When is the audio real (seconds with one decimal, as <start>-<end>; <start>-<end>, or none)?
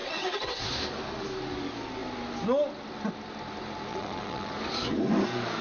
0.6-3.9; 4.5-5.6